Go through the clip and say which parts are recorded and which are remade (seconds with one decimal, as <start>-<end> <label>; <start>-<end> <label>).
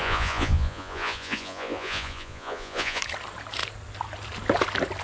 0.0-3.0 remade; 3.0-5.0 recorded